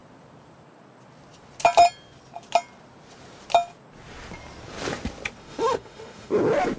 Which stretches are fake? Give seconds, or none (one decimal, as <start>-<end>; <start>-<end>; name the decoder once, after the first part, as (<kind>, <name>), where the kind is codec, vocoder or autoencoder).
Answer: 5.4-6.3 (autoencoder, DAC-VAE)